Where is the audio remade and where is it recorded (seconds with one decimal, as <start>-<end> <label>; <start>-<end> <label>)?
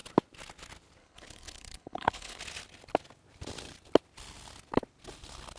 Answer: 0.0-1.0 recorded; 1.0-2.4 remade; 2.4-5.6 recorded